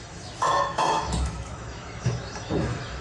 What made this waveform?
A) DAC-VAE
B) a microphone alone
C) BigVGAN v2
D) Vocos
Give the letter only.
A